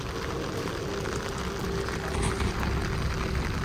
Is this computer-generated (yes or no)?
no